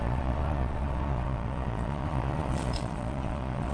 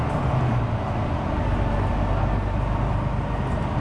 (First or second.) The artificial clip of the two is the first